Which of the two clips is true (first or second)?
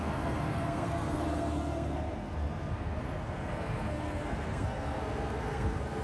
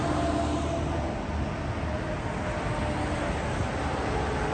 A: second